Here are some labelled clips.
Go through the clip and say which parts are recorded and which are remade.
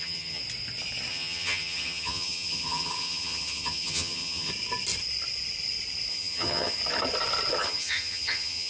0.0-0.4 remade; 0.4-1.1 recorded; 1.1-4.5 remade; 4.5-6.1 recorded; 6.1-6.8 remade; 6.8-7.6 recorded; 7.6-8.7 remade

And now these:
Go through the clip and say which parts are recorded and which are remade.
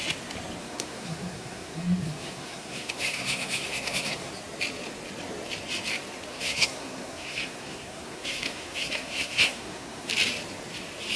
0.0-0.6 recorded; 0.6-4.3 remade; 4.3-6.3 recorded; 6.3-10.1 remade; 10.1-11.2 recorded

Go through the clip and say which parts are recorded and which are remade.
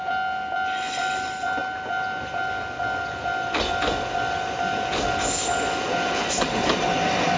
0.0-7.4 recorded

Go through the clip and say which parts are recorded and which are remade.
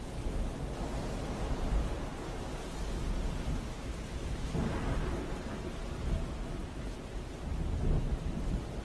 0.0-8.8 recorded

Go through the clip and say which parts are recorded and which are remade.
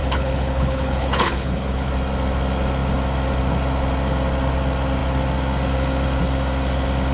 0.0-1.9 remade; 1.9-7.1 recorded